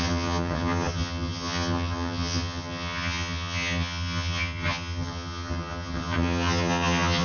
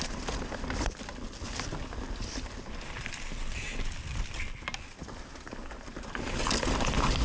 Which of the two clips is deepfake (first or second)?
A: first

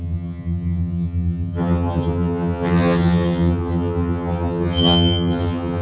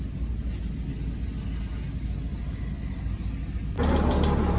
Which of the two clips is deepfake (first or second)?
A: first